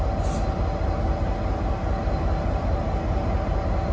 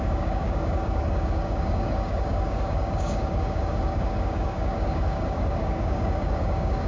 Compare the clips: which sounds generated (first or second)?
second